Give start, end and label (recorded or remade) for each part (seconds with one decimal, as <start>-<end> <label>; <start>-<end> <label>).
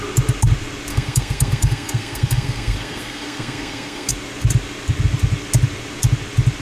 0.0-0.9 recorded; 0.9-4.1 remade; 4.1-6.6 recorded